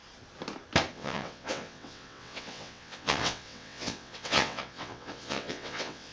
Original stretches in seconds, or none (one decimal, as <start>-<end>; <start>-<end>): 0.0-0.9